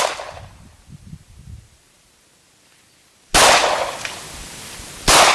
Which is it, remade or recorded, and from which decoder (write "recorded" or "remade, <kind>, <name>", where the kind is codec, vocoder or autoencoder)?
recorded